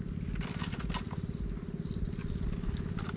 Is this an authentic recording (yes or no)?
yes